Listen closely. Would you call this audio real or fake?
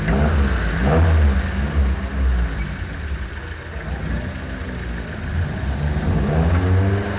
real